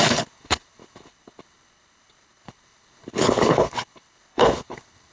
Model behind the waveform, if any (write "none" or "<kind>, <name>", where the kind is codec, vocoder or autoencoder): codec, HILCodec